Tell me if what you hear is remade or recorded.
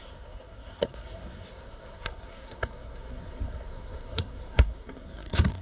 remade